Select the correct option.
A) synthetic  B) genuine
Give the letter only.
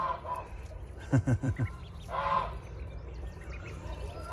A